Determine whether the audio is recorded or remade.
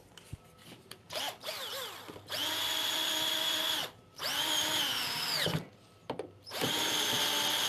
remade